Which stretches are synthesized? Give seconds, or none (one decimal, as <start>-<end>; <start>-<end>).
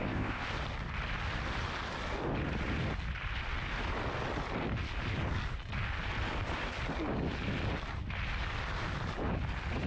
0.0-0.5